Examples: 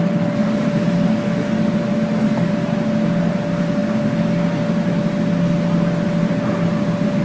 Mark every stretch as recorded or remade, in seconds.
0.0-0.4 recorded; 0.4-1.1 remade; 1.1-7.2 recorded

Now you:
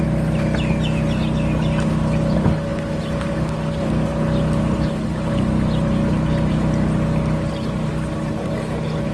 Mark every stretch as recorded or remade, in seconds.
0.0-2.7 recorded; 2.7-7.9 remade; 7.9-9.1 recorded

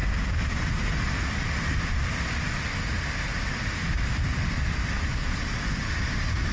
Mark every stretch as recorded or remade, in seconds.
0.0-6.5 recorded